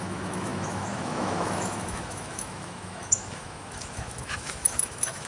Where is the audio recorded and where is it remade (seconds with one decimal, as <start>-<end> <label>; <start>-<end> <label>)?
0.0-5.3 remade